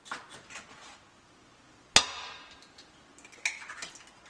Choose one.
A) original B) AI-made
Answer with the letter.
A